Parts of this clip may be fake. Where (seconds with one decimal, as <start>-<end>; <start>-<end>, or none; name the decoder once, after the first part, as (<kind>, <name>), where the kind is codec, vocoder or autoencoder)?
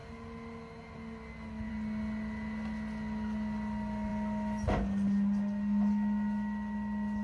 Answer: none